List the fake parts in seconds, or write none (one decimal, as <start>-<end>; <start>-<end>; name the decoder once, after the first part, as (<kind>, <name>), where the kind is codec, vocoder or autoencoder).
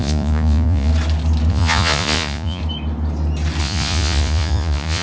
0.0-0.9 (vocoder, Vocos); 1.5-2.6; 3.6-5.0